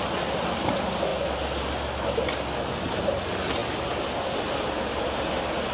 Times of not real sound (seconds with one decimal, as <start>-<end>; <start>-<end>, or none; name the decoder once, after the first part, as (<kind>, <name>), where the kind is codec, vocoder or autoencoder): none

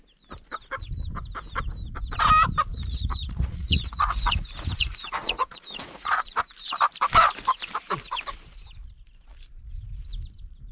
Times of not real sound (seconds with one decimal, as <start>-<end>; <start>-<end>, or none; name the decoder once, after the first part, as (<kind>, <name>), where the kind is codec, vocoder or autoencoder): 2.7-6.5 (vocoder, Vocos)